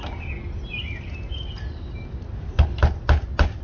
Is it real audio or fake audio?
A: real